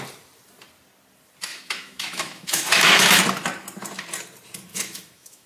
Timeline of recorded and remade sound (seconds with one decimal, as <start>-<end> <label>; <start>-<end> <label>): 0.0-1.5 recorded; 1.5-3.2 remade; 3.2-4.7 recorded; 4.7-5.5 remade